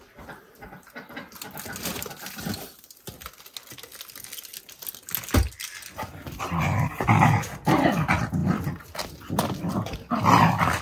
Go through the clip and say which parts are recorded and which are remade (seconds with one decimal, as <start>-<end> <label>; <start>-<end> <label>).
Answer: 0.0-10.8 recorded